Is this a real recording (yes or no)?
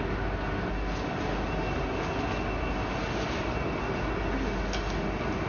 yes